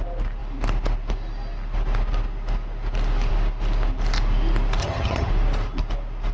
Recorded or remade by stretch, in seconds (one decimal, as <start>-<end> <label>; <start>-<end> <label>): 0.0-4.8 recorded; 4.8-5.3 remade; 5.3-6.3 recorded